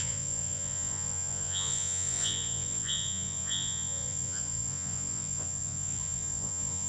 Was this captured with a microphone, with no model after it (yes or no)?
no